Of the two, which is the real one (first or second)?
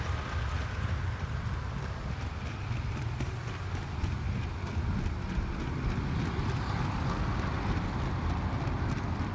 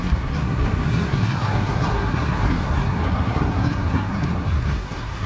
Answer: first